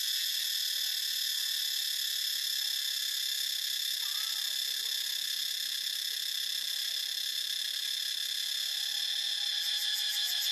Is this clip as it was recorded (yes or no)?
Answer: yes